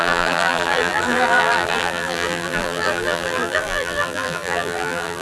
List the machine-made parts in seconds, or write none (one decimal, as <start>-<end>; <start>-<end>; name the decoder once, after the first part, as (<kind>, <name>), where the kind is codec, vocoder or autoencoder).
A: 0.0-5.2 (vocoder, BigVGAN v2)